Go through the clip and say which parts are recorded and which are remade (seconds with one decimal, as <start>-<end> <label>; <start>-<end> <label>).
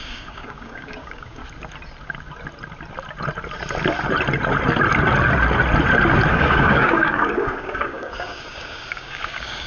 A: 0.0-1.4 remade; 1.4-6.3 recorded; 6.3-9.7 remade